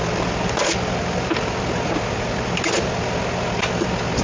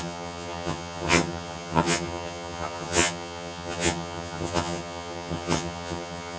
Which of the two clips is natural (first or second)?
first